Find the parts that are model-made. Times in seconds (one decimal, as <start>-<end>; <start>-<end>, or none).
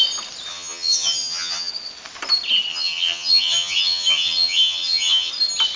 0.5-1.7; 2.7-5.3